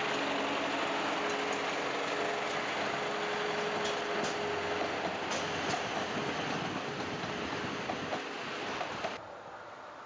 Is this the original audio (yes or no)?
yes